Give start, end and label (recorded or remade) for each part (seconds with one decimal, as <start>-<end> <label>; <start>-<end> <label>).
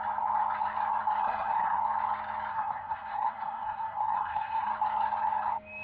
0.0-1.2 recorded; 1.2-1.8 remade; 1.8-2.5 recorded; 2.5-4.7 remade; 4.7-5.8 recorded